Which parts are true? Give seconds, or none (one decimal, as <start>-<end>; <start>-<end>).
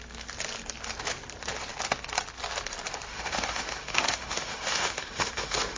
0.0-3.1